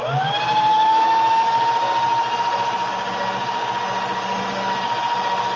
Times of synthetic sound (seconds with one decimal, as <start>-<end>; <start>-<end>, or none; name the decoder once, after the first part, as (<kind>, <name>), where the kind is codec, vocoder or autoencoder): 0.7-1.6 (autoencoder, DAC-VAE)